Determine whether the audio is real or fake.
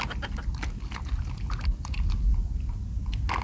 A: real